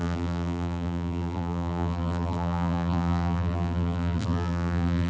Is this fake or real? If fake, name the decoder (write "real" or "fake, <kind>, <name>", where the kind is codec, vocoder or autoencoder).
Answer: fake, vocoder, BigVGAN v2